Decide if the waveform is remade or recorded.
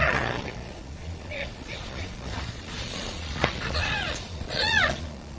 remade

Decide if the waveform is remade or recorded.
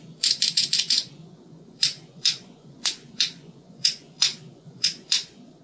remade